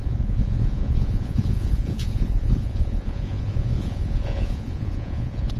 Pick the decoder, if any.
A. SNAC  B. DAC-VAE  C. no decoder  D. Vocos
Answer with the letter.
D